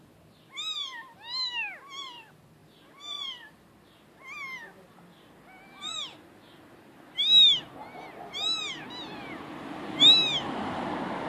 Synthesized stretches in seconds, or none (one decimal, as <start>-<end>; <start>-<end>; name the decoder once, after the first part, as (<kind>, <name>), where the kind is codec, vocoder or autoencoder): none